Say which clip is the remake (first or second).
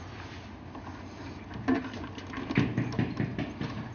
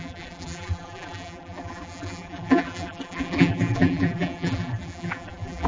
second